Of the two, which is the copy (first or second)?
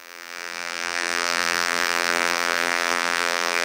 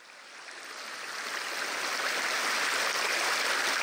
first